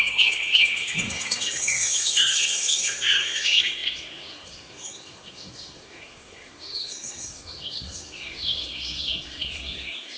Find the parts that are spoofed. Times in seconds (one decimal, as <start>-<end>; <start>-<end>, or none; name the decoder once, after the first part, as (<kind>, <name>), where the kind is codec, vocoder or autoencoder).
0.0-10.2 (codec, SNAC)